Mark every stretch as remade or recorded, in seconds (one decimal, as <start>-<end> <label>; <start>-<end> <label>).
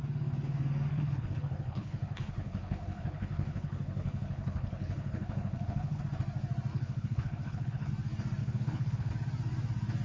0.0-0.9 recorded; 0.9-6.0 remade; 6.0-6.7 recorded; 6.7-7.9 remade; 7.9-8.4 recorded; 8.4-9.1 remade; 9.1-10.0 recorded